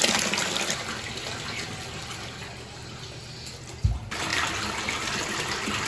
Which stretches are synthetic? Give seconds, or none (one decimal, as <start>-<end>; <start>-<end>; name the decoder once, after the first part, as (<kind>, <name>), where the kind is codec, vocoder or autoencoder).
none